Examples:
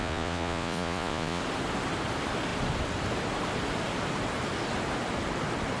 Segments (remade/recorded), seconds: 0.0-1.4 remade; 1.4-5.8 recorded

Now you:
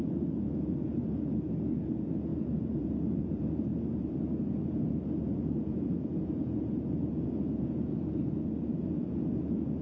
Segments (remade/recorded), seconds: 0.0-3.7 remade; 3.7-4.5 recorded; 4.5-9.8 remade

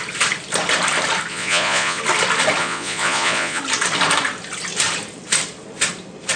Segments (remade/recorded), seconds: 0.0-1.3 recorded; 1.3-2.0 remade; 2.0-2.6 recorded; 2.6-3.6 remade; 3.6-6.4 recorded

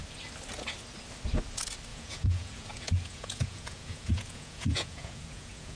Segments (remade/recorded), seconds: 0.0-1.9 recorded; 1.9-5.8 remade

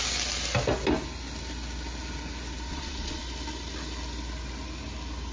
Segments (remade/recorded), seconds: 0.0-2.7 recorded; 2.7-3.2 remade; 3.2-5.3 recorded